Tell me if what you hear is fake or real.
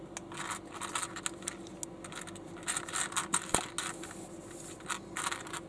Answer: real